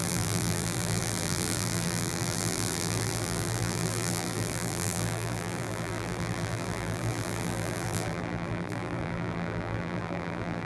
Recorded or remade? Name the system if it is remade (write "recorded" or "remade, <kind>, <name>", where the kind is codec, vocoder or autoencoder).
remade, vocoder, BigVGAN v2